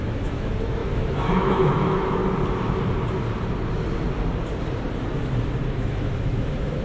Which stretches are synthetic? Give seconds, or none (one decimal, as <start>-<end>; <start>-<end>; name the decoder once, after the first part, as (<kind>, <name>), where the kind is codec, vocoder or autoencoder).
0.0-2.2 (autoencoder, DAC-VAE); 5.7-6.8